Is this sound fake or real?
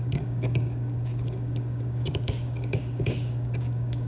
fake